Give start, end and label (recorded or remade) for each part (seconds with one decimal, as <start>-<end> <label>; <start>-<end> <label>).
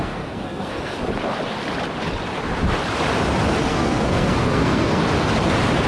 0.0-1.0 remade; 1.0-3.6 recorded; 3.6-5.0 remade; 5.0-5.9 recorded